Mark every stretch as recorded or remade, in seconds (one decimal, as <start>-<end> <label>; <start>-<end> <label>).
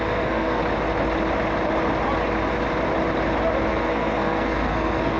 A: 0.0-0.6 remade; 0.6-3.7 recorded; 3.7-5.2 remade